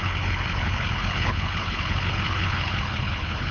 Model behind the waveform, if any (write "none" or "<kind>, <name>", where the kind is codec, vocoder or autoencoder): codec, HILCodec